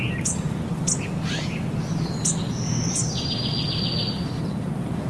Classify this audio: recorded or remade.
recorded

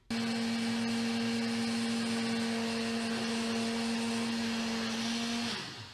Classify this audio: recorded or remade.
recorded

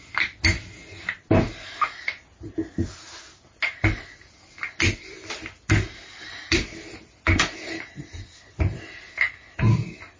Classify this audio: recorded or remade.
recorded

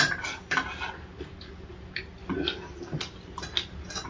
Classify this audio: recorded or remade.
recorded